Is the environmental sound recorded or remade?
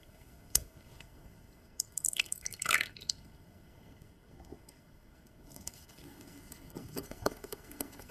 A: remade